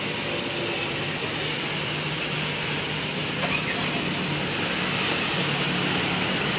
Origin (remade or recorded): recorded